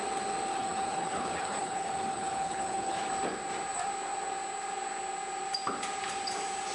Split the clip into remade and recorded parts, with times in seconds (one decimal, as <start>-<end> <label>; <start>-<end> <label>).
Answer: 0.0-0.5 recorded; 0.5-3.1 remade; 3.1-6.7 recorded